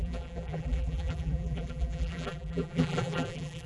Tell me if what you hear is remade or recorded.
remade